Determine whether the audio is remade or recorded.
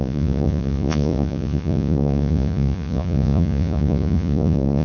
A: remade